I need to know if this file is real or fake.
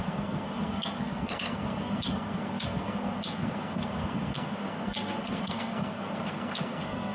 fake